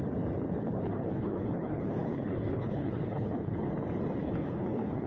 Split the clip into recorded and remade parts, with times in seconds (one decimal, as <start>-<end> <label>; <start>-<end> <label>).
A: 0.0-0.6 recorded; 0.6-3.7 remade; 3.7-4.2 recorded; 4.2-5.1 remade